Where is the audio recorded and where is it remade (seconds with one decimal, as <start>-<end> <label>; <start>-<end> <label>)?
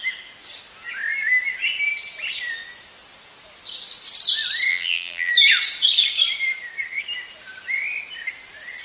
0.0-4.7 recorded; 4.7-5.3 remade; 5.3-8.8 recorded